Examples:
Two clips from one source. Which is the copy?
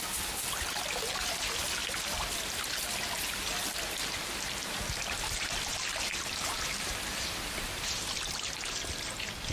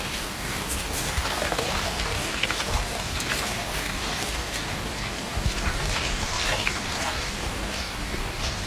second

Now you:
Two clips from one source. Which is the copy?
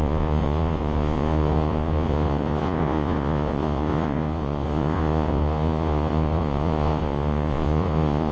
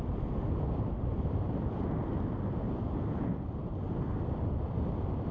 first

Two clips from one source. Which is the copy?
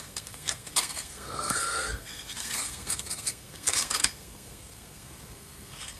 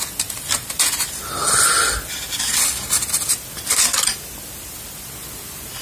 first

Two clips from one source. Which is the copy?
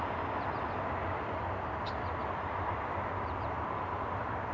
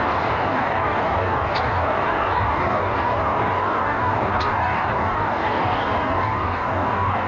second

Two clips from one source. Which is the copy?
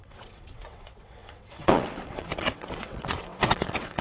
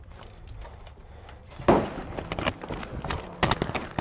first